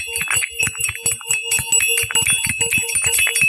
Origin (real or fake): real